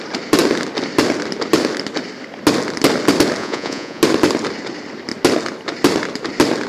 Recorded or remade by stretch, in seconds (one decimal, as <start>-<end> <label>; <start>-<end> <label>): 0.0-3.4 recorded; 3.4-4.0 remade; 4.0-6.7 recorded